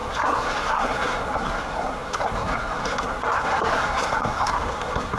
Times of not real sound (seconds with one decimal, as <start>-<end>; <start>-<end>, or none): 0.0-5.2